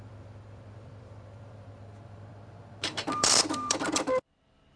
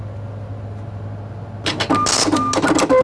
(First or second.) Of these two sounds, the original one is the second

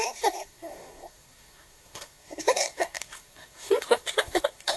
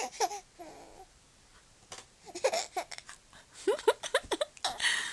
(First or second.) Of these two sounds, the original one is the second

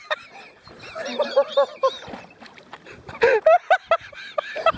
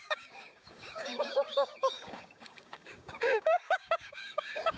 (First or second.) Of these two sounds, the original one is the first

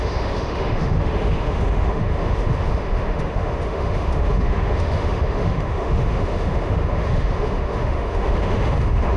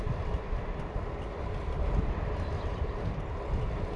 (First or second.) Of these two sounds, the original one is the second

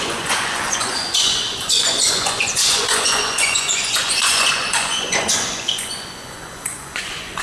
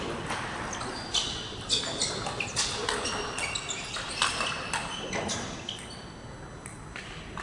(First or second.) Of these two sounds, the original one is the second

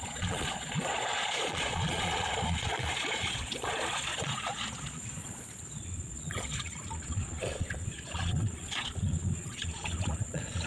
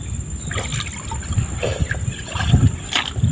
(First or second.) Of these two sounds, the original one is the second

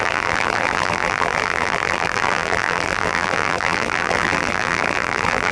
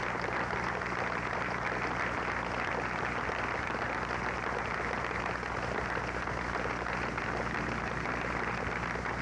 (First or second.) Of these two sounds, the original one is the second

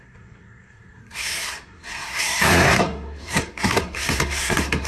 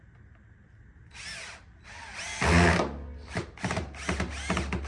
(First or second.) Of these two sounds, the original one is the second